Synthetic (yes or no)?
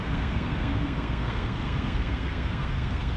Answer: yes